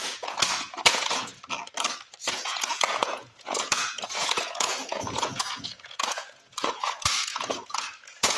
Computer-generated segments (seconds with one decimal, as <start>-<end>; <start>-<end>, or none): 0.0-1.3; 2.2-8.4